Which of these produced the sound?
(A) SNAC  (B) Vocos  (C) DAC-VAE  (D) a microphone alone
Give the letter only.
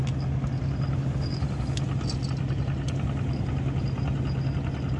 D